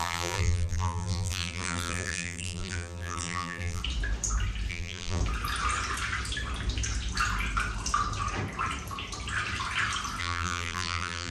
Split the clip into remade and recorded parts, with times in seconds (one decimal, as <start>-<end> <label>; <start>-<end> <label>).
0.0-3.8 remade; 3.8-4.7 recorded; 4.7-5.2 remade; 5.2-10.2 recorded; 10.2-11.3 remade